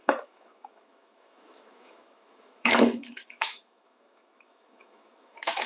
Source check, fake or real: fake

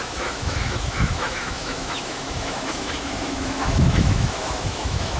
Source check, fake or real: fake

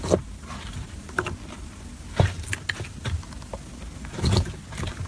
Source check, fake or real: real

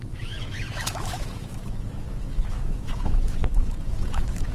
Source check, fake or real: fake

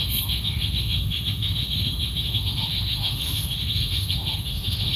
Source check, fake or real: fake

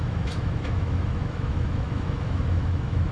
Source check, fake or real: fake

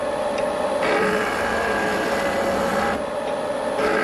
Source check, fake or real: real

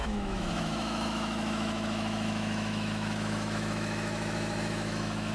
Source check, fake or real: fake